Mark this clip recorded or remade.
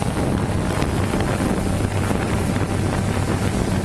recorded